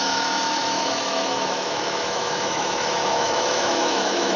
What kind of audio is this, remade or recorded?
remade